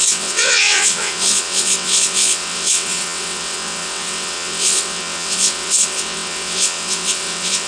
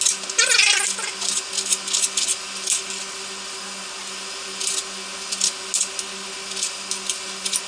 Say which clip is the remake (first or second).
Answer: first